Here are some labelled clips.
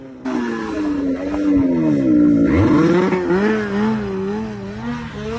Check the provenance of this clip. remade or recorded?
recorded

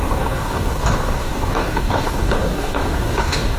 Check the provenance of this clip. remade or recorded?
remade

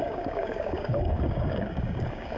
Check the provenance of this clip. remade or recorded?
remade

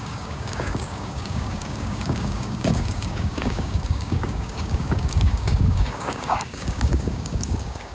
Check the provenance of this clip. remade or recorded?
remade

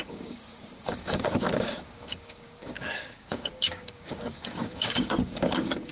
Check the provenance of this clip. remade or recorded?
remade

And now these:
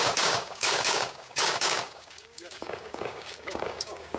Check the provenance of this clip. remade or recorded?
remade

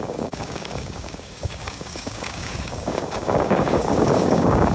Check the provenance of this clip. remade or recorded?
remade